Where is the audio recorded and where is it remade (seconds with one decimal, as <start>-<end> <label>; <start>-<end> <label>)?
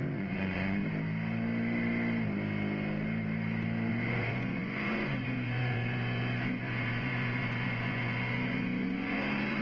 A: 0.0-0.8 remade; 0.8-3.9 recorded; 3.9-9.6 remade